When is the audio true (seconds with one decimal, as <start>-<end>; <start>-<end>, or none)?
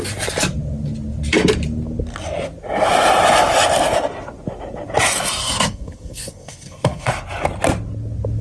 0.0-5.4; 7.1-8.4